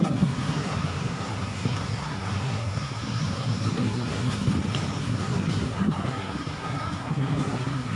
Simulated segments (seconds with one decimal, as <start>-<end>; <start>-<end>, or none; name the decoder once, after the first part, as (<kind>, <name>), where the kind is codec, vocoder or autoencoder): 0.0-4.5 (codec, SNAC); 5.0-8.0